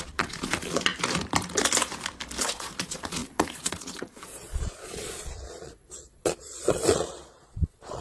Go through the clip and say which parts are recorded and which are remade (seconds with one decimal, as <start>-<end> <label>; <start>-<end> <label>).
0.0-0.9 remade; 0.9-2.4 recorded; 2.4-8.0 remade